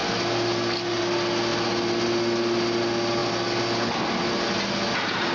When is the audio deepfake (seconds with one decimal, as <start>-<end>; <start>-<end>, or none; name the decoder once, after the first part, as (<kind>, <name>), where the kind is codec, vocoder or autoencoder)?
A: 0.0-1.0 (vocoder, BigVGAN v2)